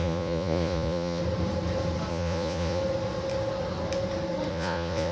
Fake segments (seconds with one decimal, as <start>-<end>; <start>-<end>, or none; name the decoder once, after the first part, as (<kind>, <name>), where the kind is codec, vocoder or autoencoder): 0.0-1.2 (vocoder, Vocos); 2.1-2.8; 4.5-5.1